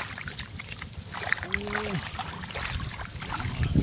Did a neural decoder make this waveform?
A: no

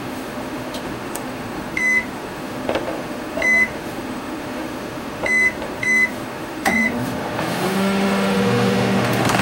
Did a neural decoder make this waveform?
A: yes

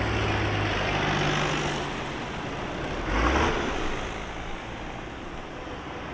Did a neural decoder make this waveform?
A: no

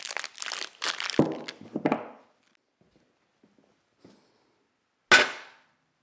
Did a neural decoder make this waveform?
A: no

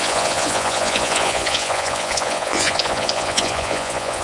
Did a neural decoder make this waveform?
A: yes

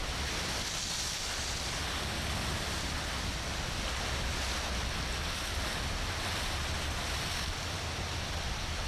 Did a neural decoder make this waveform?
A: no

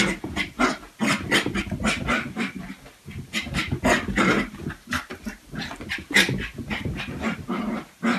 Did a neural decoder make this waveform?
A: no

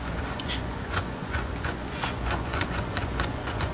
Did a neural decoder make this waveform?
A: yes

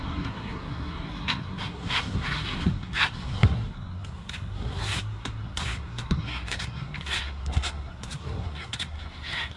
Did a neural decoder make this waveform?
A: yes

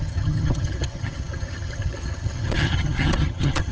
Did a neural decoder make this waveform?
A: yes